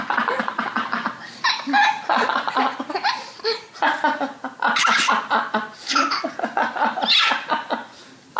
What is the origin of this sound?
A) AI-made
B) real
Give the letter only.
B